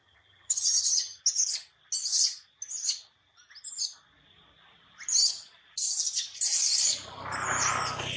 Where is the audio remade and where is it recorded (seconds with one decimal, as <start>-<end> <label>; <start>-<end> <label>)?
0.0-1.2 remade; 1.2-8.2 recorded